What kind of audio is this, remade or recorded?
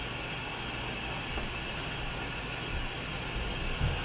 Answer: recorded